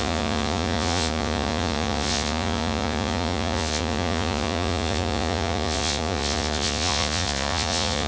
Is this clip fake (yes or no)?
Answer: yes